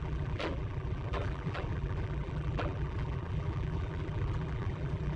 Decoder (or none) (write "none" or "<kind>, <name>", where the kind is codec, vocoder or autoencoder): vocoder, BigVGAN v2